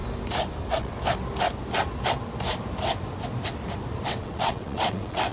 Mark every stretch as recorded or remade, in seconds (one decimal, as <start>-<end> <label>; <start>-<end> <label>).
0.0-0.6 recorded; 0.6-1.0 remade; 1.0-4.2 recorded; 4.2-5.3 remade